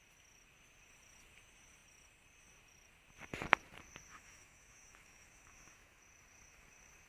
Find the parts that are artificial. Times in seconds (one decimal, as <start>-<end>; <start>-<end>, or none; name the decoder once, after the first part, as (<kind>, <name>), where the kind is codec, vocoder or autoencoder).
4.1-6.0 (autoencoder, DAC-VAE)